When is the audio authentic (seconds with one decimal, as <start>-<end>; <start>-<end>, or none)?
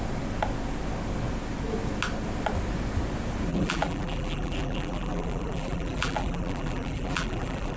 0.0-3.5